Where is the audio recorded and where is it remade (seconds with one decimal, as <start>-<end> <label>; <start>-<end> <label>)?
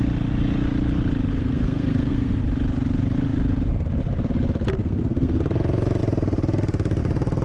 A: 0.0-1.3 recorded; 1.3-2.4 remade; 2.4-4.8 recorded; 4.8-5.4 remade; 5.4-7.4 recorded